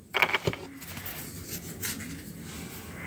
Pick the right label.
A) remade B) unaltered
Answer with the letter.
B